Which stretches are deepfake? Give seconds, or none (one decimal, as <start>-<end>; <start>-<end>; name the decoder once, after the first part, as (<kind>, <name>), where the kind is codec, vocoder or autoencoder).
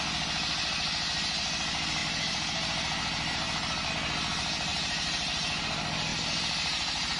2.0-3.9 (vocoder, BigVGAN v2); 4.7-5.6; 6.1-7.2